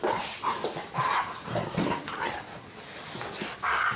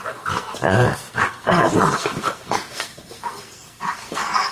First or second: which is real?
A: first